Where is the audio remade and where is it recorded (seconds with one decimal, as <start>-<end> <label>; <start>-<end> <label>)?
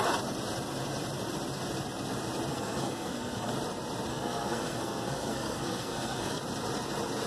0.0-2.5 recorded; 2.5-3.5 remade; 3.5-4.1 recorded; 4.1-6.4 remade; 6.4-7.3 recorded